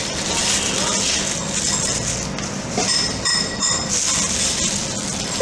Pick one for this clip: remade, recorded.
recorded